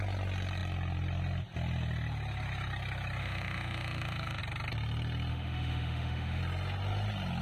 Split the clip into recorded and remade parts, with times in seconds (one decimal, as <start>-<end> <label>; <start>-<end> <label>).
0.0-3.2 recorded; 3.2-4.4 remade; 4.4-5.3 recorded; 5.3-6.4 remade; 6.4-7.4 recorded